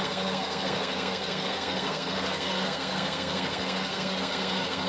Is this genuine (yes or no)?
no